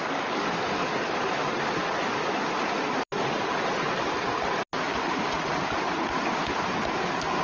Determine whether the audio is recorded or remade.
recorded